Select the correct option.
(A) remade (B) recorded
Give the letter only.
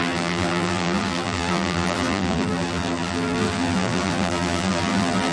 A